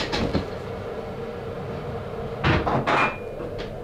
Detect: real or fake real